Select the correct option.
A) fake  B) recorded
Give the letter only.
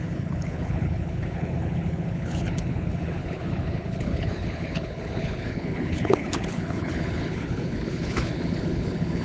A